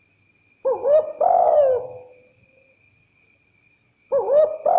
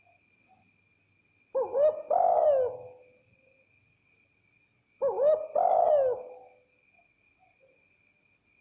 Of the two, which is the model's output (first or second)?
first